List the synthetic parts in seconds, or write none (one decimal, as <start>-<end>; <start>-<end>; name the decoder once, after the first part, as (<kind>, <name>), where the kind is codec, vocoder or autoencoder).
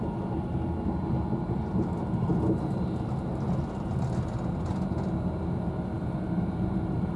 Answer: none